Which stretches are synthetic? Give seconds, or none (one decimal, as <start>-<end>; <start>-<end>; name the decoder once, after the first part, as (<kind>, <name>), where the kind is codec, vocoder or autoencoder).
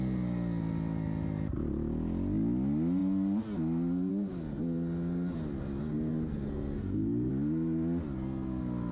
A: 6.1-7.3 (codec, SNAC)